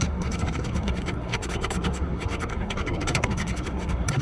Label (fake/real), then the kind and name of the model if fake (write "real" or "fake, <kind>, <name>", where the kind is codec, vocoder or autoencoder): fake, codec, SNAC